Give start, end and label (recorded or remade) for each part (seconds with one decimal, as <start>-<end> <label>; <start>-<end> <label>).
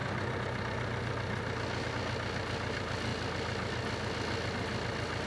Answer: 0.0-5.3 recorded